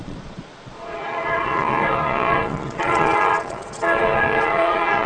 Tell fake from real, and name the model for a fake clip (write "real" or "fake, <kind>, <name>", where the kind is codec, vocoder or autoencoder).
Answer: fake, vocoder, Vocos